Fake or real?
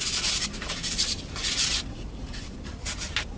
real